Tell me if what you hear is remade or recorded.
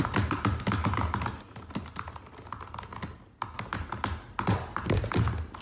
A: recorded